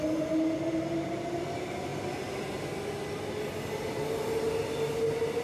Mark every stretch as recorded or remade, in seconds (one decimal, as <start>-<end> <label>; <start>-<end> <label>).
0.0-5.4 recorded